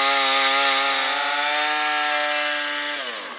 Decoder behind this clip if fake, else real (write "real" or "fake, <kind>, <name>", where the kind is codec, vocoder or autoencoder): real